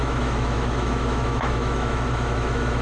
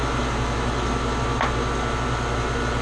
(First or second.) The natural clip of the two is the second